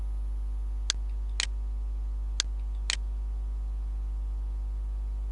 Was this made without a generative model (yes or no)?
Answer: yes